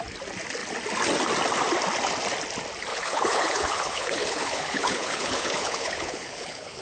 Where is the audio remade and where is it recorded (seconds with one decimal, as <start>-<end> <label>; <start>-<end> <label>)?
0.0-2.9 recorded; 2.9-6.8 remade